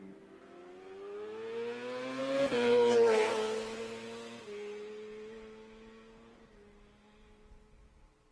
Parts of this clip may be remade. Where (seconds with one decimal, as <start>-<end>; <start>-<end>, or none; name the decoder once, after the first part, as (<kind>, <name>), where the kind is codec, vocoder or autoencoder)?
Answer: 2.2-3.3 (vocoder, BigVGAN v2)